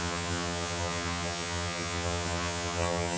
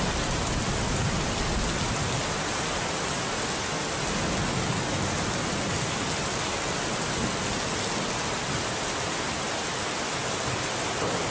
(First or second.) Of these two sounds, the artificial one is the first